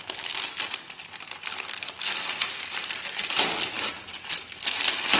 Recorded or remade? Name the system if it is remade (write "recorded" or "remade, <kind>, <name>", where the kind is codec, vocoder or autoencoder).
recorded